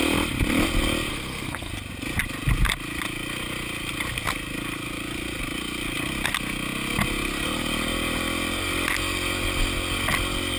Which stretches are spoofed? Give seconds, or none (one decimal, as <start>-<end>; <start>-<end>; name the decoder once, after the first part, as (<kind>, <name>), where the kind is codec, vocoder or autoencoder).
1.1-1.7 (codec, SNAC)